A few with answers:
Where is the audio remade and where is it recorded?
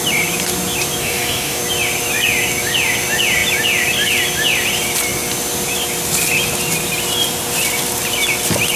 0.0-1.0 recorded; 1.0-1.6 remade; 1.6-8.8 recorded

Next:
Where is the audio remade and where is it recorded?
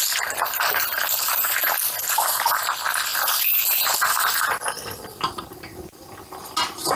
0.0-7.0 recorded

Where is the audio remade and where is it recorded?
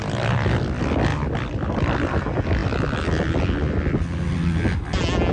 0.0-5.3 recorded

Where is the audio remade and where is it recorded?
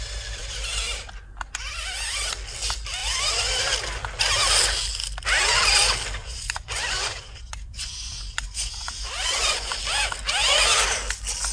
0.0-6.2 recorded; 6.2-9.8 remade; 9.8-11.5 recorded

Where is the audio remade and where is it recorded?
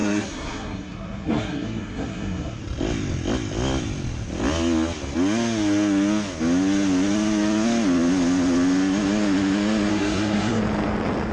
0.0-2.6 remade; 2.6-9.9 recorded; 9.9-10.6 remade; 10.6-11.3 recorded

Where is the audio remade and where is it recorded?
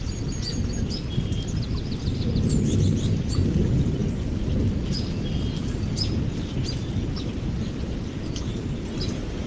0.0-9.5 recorded